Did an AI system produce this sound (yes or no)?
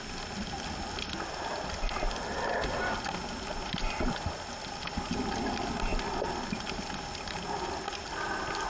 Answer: no